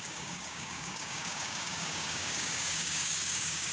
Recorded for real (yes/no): no